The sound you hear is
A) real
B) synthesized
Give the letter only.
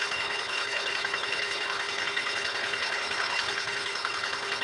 B